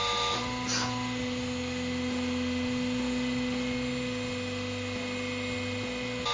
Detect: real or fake real